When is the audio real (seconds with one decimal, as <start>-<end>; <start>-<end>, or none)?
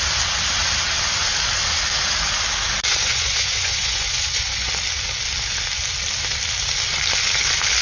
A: 0.0-2.9; 4.7-7.8